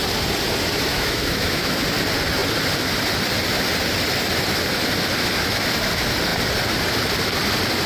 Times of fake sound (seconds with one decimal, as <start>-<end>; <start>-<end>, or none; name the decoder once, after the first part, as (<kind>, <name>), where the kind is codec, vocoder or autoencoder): 0.9-1.8 (autoencoder, DAC-VAE)